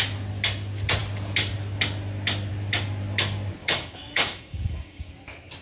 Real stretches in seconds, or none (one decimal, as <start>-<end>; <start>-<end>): 0.0-3.6; 5.1-5.6